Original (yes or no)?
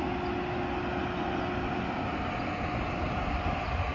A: yes